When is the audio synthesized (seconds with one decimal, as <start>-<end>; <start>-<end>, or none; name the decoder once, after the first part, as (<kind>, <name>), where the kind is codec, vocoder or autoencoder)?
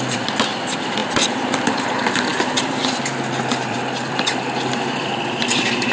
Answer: 0.0-5.9 (vocoder, BigVGAN v2)